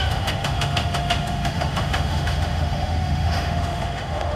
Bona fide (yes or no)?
no